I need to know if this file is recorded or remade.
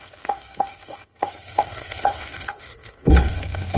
remade